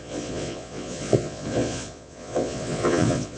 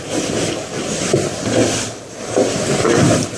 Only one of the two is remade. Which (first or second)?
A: first